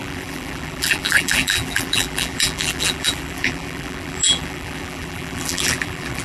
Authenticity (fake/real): fake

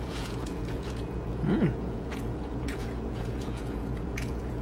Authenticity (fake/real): fake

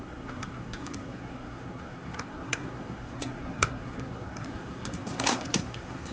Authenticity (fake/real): fake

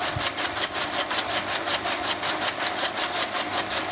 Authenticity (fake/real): real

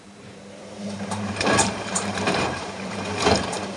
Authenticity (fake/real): fake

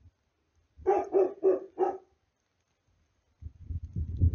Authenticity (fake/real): real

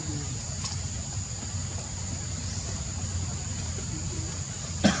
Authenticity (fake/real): real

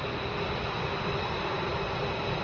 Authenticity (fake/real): real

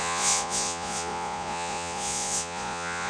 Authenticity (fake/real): fake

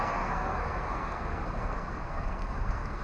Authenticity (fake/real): fake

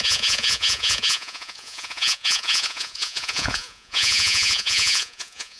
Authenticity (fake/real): fake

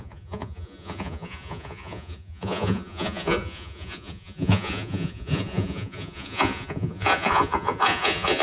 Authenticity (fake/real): fake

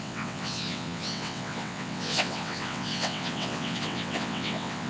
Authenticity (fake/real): fake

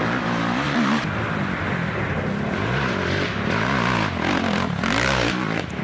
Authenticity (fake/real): real